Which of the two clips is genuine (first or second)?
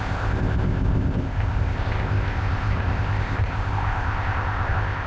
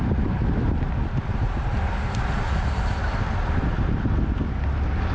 second